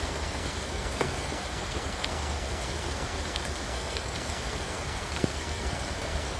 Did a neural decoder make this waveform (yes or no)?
yes